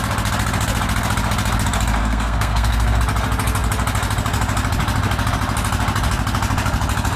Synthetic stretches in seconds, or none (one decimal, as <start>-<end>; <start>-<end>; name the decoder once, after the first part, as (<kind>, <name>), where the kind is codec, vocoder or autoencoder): 2.0-3.0 (codec, SNAC)